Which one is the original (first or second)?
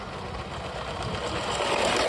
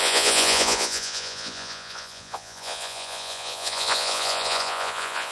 first